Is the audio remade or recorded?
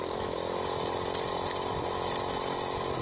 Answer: recorded